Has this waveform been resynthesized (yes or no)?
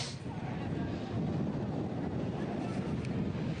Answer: no